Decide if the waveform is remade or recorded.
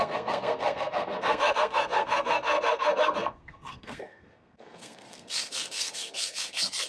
remade